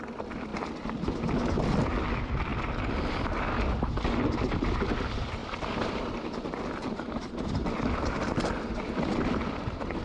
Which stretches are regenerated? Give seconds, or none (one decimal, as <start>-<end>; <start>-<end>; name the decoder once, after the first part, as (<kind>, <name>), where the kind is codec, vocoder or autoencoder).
5.4-10.0 (vocoder, BigVGAN v2)